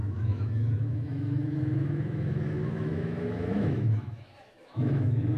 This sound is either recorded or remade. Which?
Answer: remade